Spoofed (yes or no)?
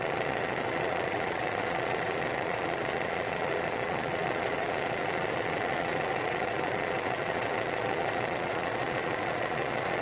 yes